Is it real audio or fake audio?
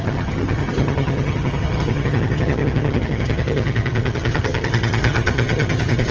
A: fake